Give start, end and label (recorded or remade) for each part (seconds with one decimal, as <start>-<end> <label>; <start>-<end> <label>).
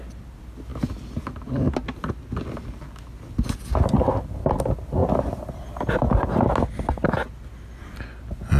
0.0-8.6 recorded